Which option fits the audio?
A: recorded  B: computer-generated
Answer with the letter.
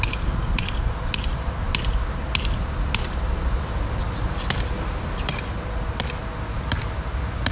A